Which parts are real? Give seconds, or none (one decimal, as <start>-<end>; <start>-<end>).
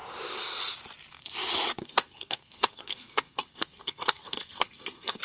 0.0-1.8